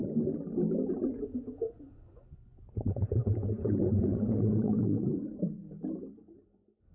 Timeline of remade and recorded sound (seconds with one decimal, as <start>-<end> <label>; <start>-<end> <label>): 0.0-0.9 recorded; 0.9-5.6 remade; 5.6-6.1 recorded; 6.1-6.9 remade